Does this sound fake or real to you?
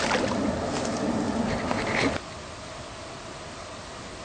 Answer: real